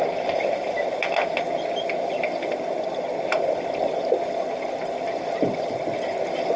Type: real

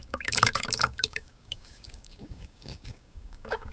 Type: fake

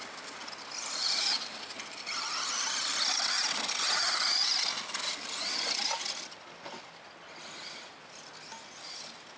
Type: real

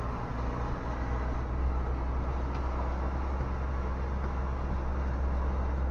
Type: real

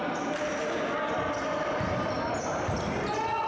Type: real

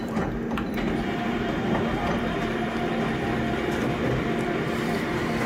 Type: fake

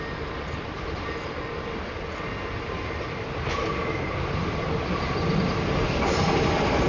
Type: real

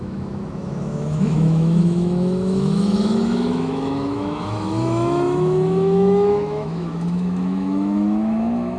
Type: fake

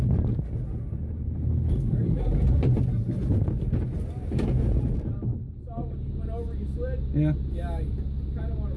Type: real